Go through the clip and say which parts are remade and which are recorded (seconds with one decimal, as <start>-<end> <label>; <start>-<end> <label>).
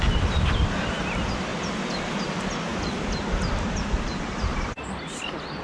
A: 0.0-5.6 recorded